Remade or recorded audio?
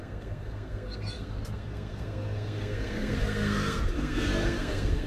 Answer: remade